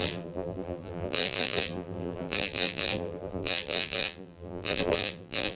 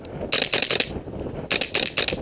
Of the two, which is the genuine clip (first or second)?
second